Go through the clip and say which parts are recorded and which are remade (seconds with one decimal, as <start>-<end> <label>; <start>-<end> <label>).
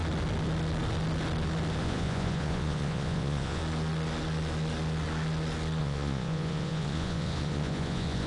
0.0-1.8 recorded; 1.8-3.6 remade; 3.6-5.8 recorded; 5.8-8.3 remade